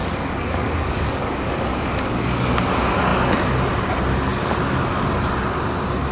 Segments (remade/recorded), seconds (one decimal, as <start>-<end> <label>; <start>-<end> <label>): 0.0-2.7 remade; 2.7-4.3 recorded; 4.3-5.1 remade; 5.1-6.1 recorded